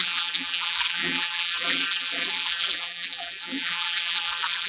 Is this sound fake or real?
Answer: fake